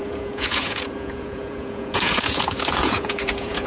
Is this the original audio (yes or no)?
no